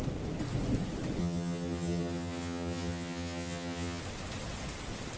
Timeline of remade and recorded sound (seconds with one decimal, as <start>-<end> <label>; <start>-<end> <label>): 0.0-1.2 recorded; 1.2-4.0 remade; 4.0-5.2 recorded